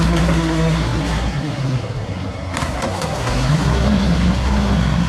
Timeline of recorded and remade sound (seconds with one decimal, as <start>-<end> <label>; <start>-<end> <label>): 0.0-5.1 remade